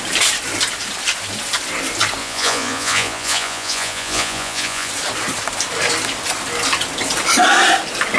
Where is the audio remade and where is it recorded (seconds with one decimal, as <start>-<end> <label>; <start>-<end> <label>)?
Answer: 0.0-2.2 recorded; 2.2-4.9 remade; 4.9-8.2 recorded